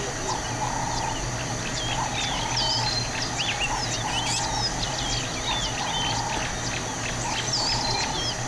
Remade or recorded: recorded